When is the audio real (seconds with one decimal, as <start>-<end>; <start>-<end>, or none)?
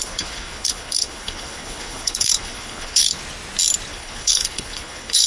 3.2-3.9